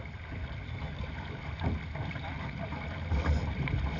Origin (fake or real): real